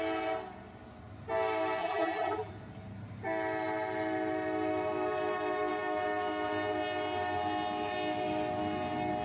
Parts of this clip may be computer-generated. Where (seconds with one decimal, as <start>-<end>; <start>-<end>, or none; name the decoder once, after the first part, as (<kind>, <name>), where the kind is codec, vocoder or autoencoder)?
1.8-2.5 (vocoder, BigVGAN v2)